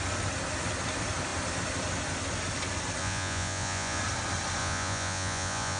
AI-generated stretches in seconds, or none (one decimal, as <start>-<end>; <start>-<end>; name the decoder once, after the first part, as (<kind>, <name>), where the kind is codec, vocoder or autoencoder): 3.0-4.0 (vocoder, Vocos); 4.6-5.8